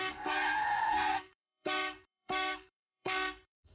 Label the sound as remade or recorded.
remade